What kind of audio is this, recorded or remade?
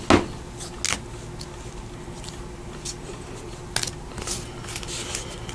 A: recorded